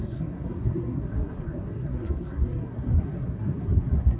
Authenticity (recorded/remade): remade